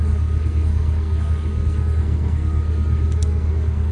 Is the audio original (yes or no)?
no